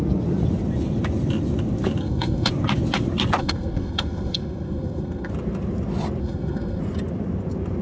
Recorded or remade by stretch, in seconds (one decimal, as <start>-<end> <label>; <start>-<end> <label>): 0.0-2.0 recorded; 2.0-2.5 remade; 2.5-3.4 recorded; 3.4-5.3 remade; 5.3-6.2 recorded; 6.2-6.8 remade; 6.8-7.8 recorded